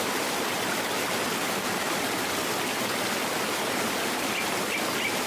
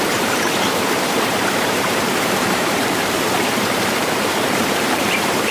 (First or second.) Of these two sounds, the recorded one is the first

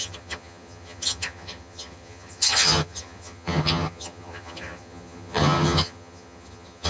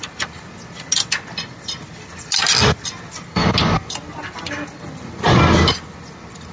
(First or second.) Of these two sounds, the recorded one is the second